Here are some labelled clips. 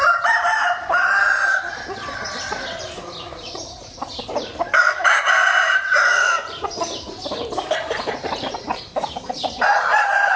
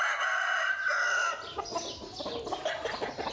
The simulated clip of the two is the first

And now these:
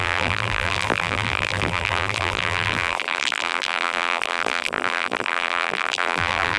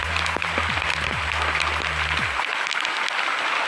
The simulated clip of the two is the first